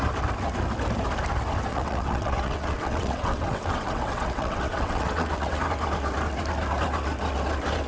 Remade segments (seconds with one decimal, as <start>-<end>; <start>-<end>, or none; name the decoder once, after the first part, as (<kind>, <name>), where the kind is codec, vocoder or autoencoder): 1.7-5.6 (vocoder, WaveNeXt)